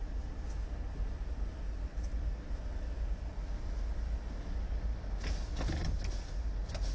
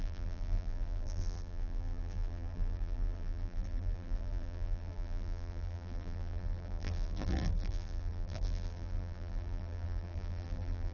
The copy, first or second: second